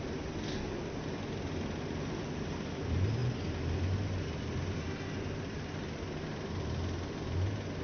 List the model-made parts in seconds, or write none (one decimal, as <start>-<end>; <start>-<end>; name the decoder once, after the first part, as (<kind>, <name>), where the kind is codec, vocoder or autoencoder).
none